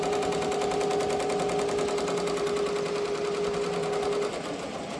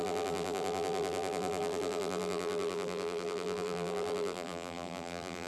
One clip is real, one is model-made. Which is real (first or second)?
first